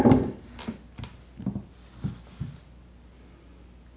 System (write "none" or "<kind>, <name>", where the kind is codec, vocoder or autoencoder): none